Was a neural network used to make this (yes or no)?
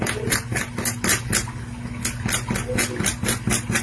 no